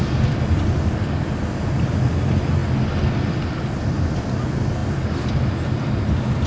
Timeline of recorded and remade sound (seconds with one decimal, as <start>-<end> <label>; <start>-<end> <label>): 0.0-6.5 recorded